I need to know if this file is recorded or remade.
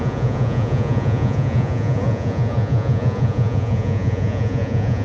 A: remade